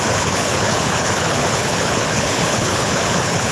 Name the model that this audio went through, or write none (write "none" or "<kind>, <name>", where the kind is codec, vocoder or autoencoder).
codec, HILCodec